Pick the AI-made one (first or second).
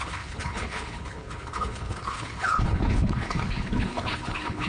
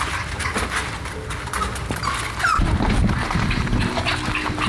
first